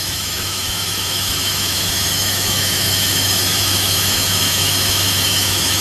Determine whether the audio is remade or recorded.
remade